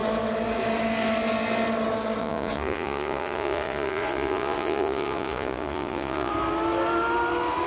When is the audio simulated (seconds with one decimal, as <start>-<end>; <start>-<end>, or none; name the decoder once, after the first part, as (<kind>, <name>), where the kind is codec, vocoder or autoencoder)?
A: 2.2-6.3 (vocoder, Vocos)